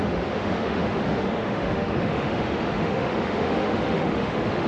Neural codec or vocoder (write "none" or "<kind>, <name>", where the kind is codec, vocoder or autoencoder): autoencoder, DAC-VAE